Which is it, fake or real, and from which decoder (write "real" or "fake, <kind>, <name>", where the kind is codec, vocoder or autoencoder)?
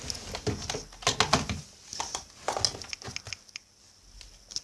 real